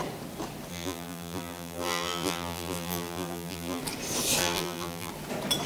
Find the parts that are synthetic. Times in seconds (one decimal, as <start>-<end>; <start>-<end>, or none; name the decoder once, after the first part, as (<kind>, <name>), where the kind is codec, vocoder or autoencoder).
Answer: 0.7-3.8 (vocoder, BigVGAN v2); 4.4-5.1